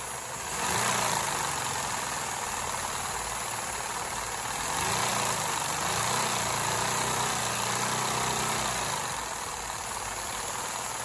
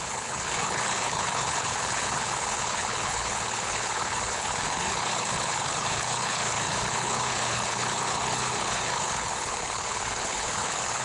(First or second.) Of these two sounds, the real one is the first